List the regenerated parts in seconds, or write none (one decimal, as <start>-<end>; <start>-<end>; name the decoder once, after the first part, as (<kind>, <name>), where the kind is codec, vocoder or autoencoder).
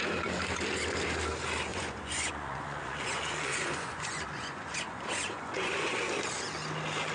1.7-6.0 (vocoder, Vocos)